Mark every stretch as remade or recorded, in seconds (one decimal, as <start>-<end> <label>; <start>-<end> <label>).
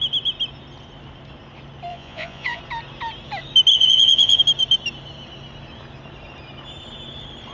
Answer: 0.0-1.9 recorded; 1.9-2.6 remade; 2.6-3.7 recorded; 3.7-4.4 remade; 4.4-7.5 recorded